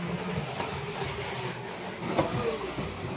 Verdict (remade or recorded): recorded